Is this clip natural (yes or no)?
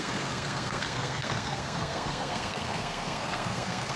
no